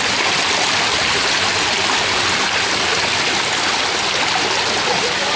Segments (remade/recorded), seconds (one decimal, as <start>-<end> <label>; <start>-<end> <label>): 0.0-0.9 recorded; 0.9-2.2 remade; 2.2-5.4 recorded